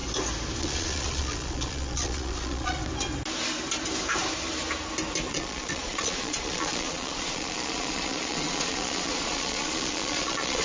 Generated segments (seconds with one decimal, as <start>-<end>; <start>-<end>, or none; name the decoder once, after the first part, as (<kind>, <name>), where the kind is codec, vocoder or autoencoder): 0.6-2.8 (vocoder, Vocos); 5.3-10.6